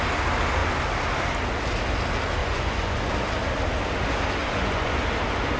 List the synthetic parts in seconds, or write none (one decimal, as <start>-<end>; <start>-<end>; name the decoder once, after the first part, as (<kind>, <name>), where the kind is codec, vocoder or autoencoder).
2.4-3.1 (vocoder, Vocos); 4.4-5.0